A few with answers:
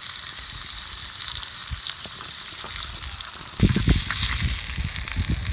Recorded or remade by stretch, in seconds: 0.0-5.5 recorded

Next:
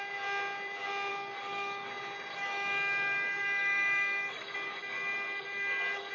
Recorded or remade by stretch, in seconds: 0.0-1.1 recorded; 1.1-1.9 remade; 1.9-2.3 recorded; 2.3-6.1 remade

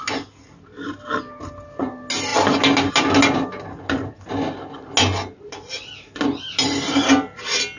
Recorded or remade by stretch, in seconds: 0.0-7.8 recorded